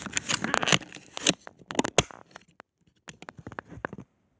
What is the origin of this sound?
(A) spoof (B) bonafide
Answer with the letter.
B